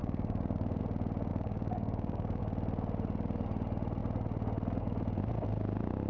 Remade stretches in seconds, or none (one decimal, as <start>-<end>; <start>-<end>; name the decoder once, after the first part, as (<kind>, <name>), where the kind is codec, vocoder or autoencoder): 0.0-0.8 (codec, DAC); 1.3-2.4